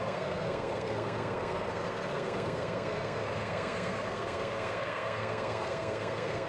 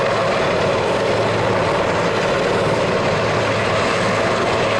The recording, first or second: second